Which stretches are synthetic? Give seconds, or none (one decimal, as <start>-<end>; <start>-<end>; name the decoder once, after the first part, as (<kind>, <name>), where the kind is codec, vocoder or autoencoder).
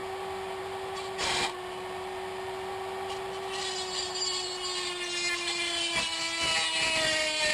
none